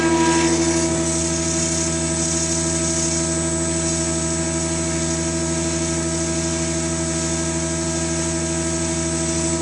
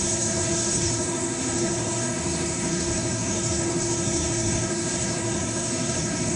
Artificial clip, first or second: second